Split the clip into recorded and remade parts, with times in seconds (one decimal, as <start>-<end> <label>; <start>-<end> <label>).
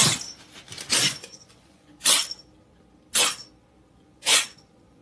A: 0.0-1.0 recorded; 1.0-2.0 remade; 2.0-3.9 recorded; 3.9-5.0 remade